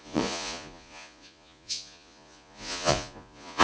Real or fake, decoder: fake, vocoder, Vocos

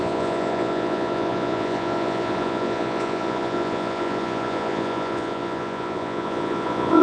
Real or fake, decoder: fake, vocoder, Vocos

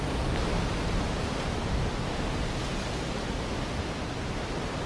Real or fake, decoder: real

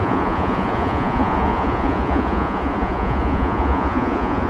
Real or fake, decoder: fake, vocoder, Vocos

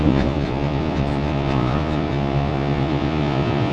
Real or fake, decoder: fake, vocoder, Vocos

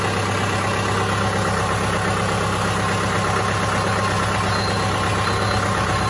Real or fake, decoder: real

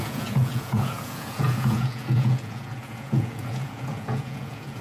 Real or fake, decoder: fake, vocoder, Vocos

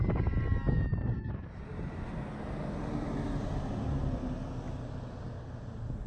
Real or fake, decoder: real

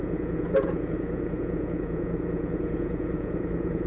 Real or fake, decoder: fake, vocoder, Vocos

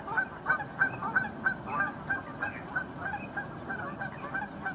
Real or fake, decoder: real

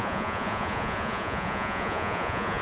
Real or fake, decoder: fake, vocoder, Vocos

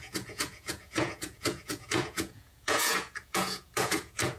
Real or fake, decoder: fake, vocoder, Vocos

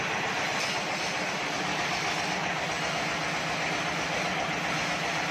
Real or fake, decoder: real